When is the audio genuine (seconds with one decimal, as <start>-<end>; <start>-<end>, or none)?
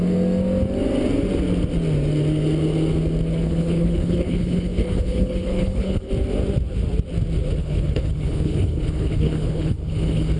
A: 0.0-3.3; 6.1-7.6